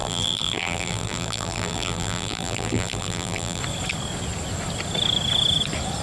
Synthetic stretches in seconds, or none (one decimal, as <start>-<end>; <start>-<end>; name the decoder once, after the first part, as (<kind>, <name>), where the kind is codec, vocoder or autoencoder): 0.0-3.6 (vocoder, BigVGAN v2)

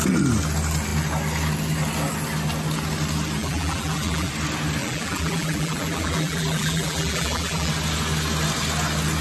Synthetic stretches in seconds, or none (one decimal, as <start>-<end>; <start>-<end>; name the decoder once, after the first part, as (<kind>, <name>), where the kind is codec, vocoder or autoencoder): 3.4-4.3 (vocoder, BigVGAN v2); 4.8-7.7

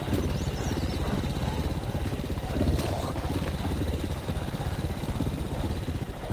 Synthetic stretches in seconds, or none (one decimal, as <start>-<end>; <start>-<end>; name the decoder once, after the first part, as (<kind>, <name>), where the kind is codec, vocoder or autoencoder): 2.1-3.4 (vocoder, BigVGAN v2)

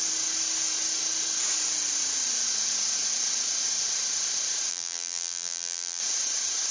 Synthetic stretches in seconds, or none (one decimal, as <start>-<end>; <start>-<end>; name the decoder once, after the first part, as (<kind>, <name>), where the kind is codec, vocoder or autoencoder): 4.7-6.0 (vocoder, BigVGAN v2)

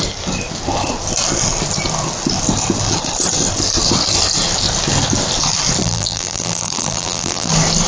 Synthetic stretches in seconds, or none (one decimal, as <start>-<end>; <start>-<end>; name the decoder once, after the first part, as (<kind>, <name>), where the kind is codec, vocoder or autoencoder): 5.8-7.5 (vocoder, BigVGAN v2)

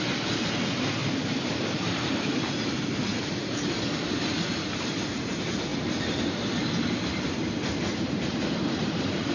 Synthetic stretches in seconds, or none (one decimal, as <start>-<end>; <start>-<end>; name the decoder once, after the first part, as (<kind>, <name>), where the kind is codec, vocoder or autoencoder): 1.0-2.5 (vocoder, BigVGAN v2); 3.1-5.2; 5.7-6.2; 7.9-9.3